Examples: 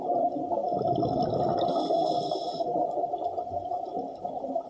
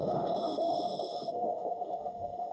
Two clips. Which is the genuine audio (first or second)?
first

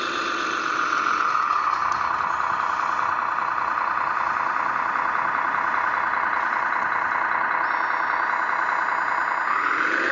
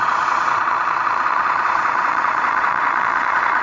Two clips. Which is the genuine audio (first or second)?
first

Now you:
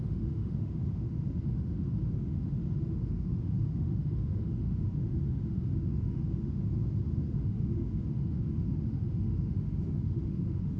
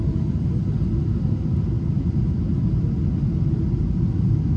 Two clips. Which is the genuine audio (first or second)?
second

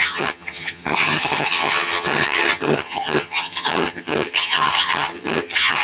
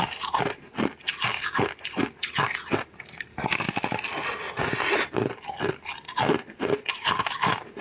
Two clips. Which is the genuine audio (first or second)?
second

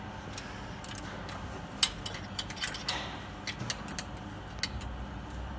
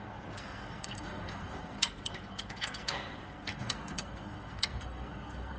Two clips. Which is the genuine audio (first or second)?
first